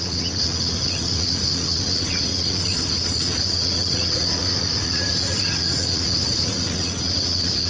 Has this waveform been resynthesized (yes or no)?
yes